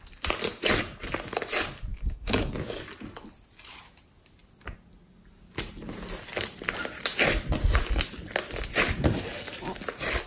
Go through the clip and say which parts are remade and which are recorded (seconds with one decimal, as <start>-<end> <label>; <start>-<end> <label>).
0.0-1.9 recorded; 1.9-2.5 remade; 2.5-10.3 recorded

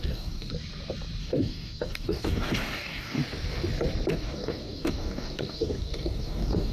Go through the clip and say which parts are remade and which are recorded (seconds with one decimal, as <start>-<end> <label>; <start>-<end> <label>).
0.0-0.5 remade; 0.5-1.2 recorded; 1.2-3.2 remade; 3.2-4.1 recorded; 4.1-6.7 remade

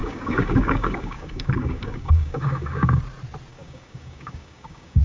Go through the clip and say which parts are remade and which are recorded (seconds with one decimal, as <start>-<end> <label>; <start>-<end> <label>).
0.0-3.0 remade; 3.0-3.5 recorded; 3.5-5.0 remade